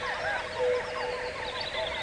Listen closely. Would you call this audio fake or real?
real